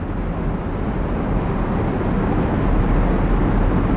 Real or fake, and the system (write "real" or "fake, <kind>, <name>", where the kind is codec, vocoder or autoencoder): real